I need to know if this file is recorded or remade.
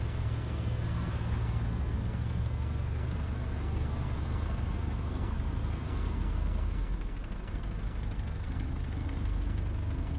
remade